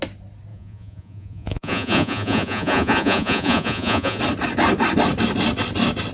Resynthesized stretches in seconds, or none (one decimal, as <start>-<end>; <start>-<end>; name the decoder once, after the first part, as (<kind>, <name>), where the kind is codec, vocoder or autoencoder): 0.5-4.2 (vocoder, Vocos)